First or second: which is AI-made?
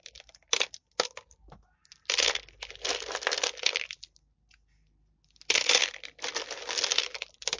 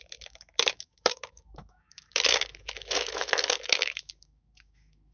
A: second